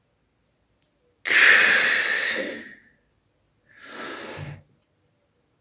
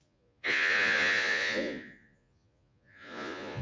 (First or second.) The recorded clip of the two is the first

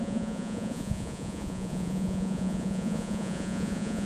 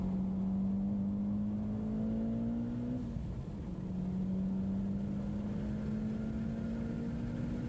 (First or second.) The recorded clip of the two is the second